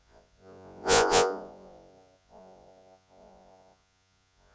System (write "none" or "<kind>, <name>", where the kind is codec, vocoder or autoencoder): vocoder, Vocos